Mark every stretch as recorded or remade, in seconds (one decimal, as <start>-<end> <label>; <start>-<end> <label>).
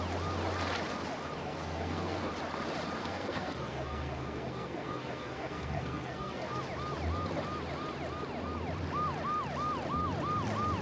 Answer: 0.0-1.4 recorded; 1.4-2.3 remade; 2.3-3.0 recorded; 3.0-6.6 remade; 6.6-10.8 recorded